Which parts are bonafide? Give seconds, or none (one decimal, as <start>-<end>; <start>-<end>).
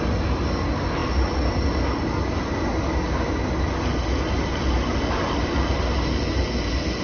0.0-7.0